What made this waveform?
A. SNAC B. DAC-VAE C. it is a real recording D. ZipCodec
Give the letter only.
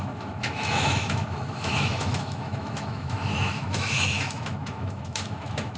B